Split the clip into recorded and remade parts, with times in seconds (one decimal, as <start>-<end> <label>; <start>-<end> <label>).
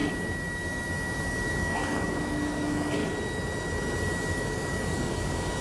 0.0-1.5 recorded; 1.5-3.0 remade; 3.0-4.3 recorded; 4.3-5.6 remade